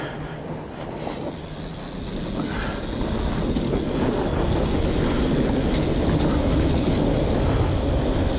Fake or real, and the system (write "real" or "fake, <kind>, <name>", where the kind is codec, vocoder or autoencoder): real